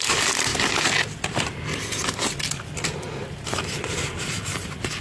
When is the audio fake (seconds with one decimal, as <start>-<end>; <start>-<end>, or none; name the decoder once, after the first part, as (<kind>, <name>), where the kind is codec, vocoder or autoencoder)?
none